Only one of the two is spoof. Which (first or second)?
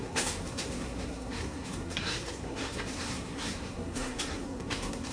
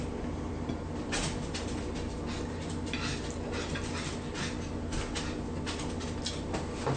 first